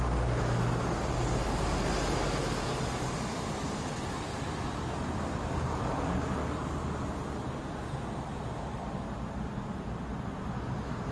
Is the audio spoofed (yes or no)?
no